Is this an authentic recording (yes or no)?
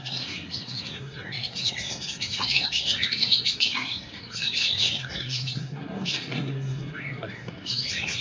no